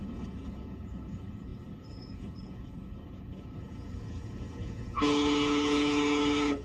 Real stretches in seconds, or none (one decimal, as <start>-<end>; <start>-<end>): none